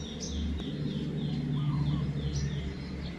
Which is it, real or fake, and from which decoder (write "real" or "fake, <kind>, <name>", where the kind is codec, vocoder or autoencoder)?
real